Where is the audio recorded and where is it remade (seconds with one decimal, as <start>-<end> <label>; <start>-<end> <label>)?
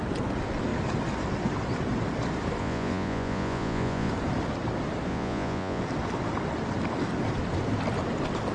0.0-2.6 recorded; 2.6-4.1 remade; 4.1-5.1 recorded; 5.1-5.8 remade; 5.8-8.5 recorded